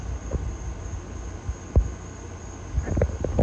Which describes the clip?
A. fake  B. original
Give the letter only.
B